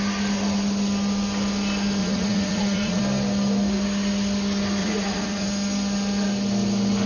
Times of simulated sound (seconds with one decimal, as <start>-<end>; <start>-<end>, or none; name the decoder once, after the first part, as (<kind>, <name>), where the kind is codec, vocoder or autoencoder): 2.0-3.0 (vocoder, Vocos); 4.8-5.5